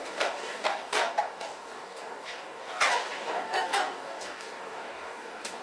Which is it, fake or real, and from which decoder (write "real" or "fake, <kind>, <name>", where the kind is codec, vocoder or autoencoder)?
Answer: fake, codec, DAC